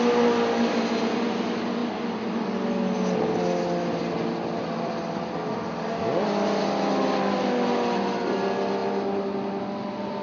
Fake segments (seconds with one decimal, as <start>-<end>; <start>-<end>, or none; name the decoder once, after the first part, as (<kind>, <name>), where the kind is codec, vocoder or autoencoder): 8.8-9.6 (vocoder, BigVGAN v2)